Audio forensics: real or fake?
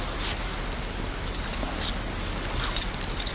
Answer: real